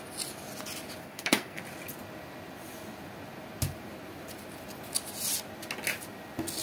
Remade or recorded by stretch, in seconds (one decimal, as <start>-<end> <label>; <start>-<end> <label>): 0.0-1.0 recorded; 1.0-1.6 remade; 1.6-6.6 recorded